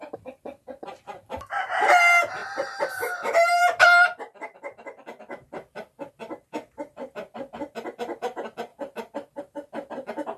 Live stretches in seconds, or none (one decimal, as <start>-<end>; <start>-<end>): 0.0-2.4; 6.1-8.7; 9.4-10.4